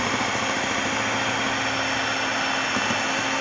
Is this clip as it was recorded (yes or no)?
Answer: yes